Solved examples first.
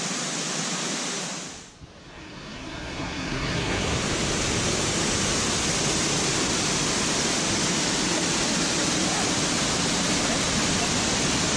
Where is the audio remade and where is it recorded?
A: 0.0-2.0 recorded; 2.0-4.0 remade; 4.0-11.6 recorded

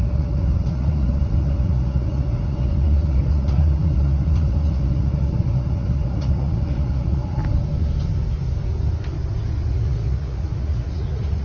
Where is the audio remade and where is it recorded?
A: 0.0-7.4 remade; 7.4-9.7 recorded; 9.7-11.4 remade

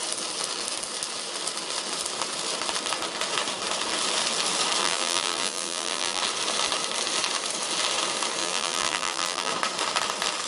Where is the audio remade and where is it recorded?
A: 0.0-4.8 recorded; 4.8-6.2 remade; 6.2-8.4 recorded; 8.4-9.5 remade; 9.5-10.5 recorded

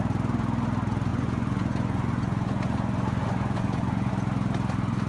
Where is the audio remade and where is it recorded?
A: 0.0-1.1 recorded; 1.1-4.1 remade; 4.1-5.1 recorded

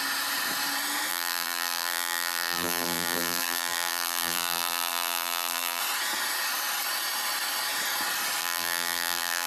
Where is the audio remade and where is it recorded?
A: 0.0-1.1 recorded; 1.1-5.8 remade; 5.8-8.4 recorded; 8.4-9.5 remade